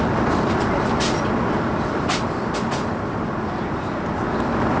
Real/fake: fake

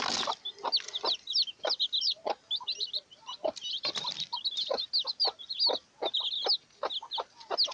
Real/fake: real